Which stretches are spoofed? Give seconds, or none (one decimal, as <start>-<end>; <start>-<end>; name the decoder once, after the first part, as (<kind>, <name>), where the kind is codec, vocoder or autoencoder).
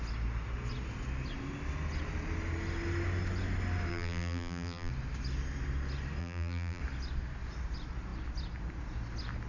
3.9-4.9 (vocoder, BigVGAN v2); 6.2-6.8